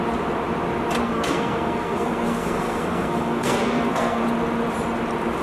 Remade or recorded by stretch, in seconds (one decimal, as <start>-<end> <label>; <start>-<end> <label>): 0.0-1.0 recorded; 1.0-4.2 remade; 4.2-5.4 recorded